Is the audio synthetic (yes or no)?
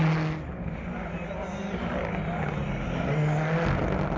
no